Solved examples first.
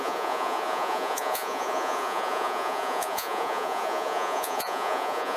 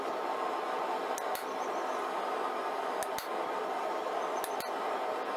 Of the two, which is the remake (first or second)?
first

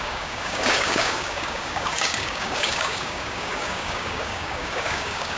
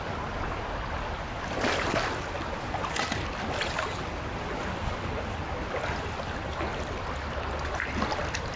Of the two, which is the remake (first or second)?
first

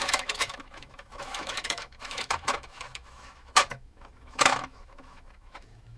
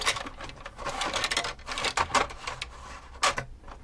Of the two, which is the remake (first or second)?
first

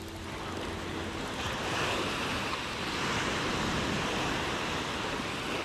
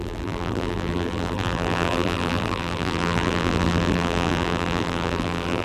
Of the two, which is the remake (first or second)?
second